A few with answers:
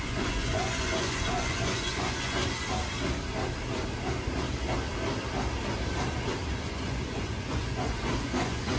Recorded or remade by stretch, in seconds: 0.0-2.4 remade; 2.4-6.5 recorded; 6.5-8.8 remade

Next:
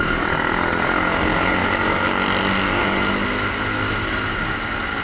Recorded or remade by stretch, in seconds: 0.0-5.0 recorded

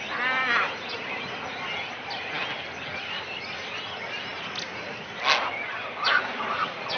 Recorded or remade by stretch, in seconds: 0.0-7.0 recorded

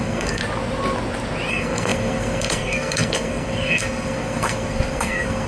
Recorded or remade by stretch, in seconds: 0.0-0.4 remade; 0.4-1.5 recorded; 1.5-5.5 remade

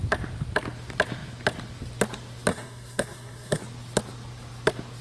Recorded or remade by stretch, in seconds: 0.0-2.5 recorded; 2.5-3.6 remade; 3.6-5.0 recorded